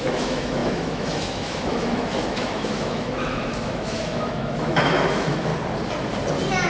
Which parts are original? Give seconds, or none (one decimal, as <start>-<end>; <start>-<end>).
5.5-6.7